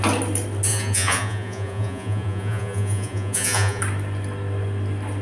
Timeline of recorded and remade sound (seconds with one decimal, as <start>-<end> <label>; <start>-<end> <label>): 0.0-0.7 recorded; 0.7-3.8 remade; 3.8-5.2 recorded